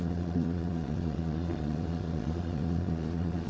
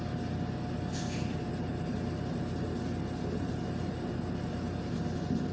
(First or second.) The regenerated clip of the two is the first